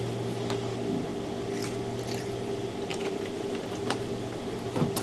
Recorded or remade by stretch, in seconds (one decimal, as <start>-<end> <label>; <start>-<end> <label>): 0.0-2.9 recorded; 2.9-4.1 remade; 4.1-5.0 recorded